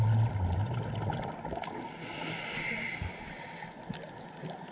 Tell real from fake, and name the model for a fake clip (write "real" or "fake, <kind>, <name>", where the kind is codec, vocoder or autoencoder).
real